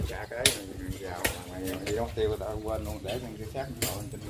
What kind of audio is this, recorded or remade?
recorded